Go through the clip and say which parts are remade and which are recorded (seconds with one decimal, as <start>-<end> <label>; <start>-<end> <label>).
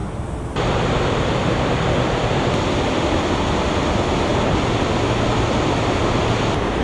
0.0-6.8 recorded